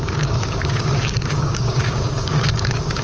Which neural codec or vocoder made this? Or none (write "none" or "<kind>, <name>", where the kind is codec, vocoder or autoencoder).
codec, DAC